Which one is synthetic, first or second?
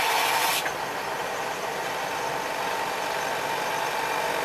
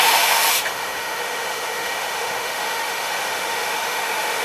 second